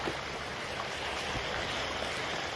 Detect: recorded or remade recorded